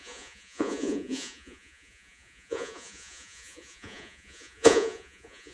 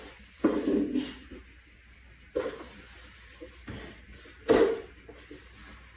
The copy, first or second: first